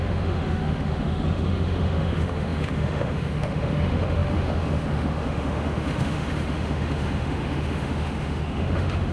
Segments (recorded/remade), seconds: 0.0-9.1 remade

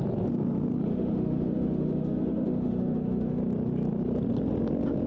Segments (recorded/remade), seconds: 0.0-0.9 recorded; 0.9-3.4 remade; 3.4-5.1 recorded

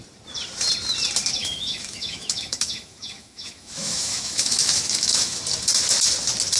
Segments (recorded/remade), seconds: 0.0-1.4 recorded; 1.4-5.4 remade; 5.4-6.6 recorded

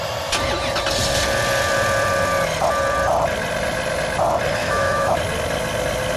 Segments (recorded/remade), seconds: 0.0-4.6 recorded; 4.6-5.2 remade; 5.2-6.2 recorded

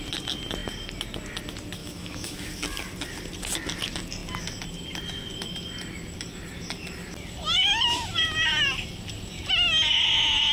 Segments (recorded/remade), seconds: 0.0-1.8 recorded; 1.8-2.5 remade; 2.5-10.5 recorded

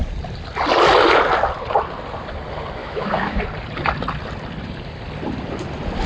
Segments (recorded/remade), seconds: 0.0-2.8 recorded; 2.8-3.4 remade; 3.4-6.1 recorded

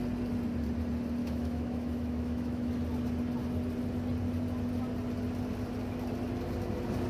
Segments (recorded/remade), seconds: 0.0-1.2 recorded; 1.2-2.7 remade; 2.7-7.1 recorded